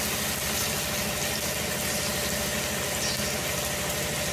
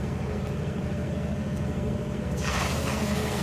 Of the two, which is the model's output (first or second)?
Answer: second